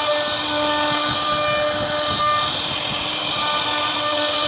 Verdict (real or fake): real